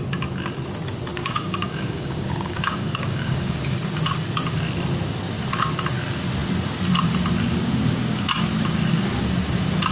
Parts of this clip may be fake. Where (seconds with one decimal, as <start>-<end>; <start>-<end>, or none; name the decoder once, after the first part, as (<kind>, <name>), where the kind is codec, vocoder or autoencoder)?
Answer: 1.1-3.6 (codec, DAC)